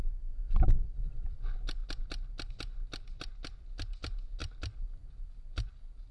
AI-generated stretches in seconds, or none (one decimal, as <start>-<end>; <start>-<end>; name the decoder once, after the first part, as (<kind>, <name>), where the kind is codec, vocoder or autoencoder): none